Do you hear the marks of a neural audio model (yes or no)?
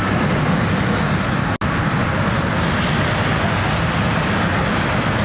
no